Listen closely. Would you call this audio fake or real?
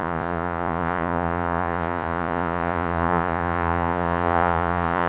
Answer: fake